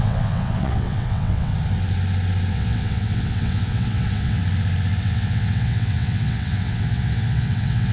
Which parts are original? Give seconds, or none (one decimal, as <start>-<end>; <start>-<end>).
1.5-2.5; 4.4-5.0